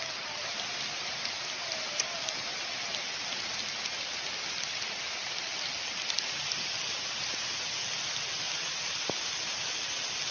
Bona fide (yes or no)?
yes